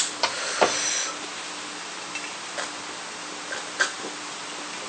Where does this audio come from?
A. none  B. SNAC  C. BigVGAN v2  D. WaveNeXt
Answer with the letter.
A